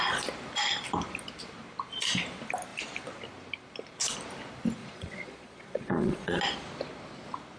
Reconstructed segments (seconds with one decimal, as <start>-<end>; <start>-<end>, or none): 4.8-6.4